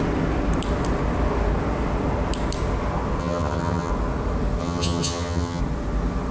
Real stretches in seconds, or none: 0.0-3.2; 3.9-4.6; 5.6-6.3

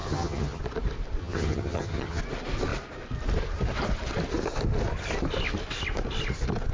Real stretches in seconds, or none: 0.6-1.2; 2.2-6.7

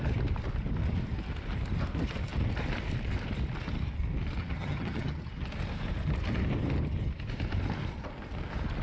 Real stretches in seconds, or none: 0.0-4.4; 5.3-8.8

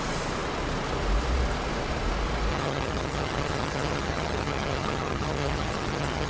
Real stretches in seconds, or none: 0.0-2.5

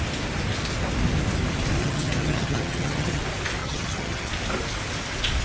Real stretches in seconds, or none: 0.0-1.8; 3.2-3.6; 4.3-5.4

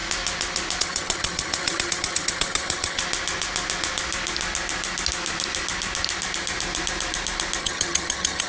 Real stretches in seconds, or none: 0.0-0.8; 3.0-7.6

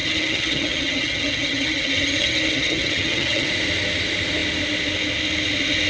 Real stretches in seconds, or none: 3.5-5.9